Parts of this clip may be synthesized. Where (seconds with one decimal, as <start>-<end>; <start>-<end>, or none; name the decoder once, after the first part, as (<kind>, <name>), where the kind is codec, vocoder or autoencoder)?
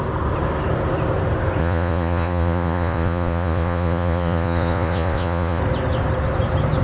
1.6-5.6 (vocoder, Vocos)